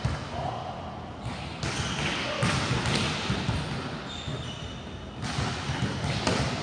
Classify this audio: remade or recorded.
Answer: recorded